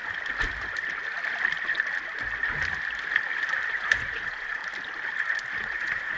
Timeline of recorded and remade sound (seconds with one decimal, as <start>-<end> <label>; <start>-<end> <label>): 0.0-3.7 recorded; 3.7-4.6 remade; 4.6-5.6 recorded; 5.6-6.2 remade